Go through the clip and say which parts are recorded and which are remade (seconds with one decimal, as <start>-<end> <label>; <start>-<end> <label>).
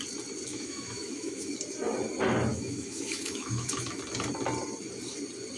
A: 0.0-0.5 recorded; 0.5-1.5 remade; 1.5-2.5 recorded; 2.5-4.0 remade; 4.0-5.6 recorded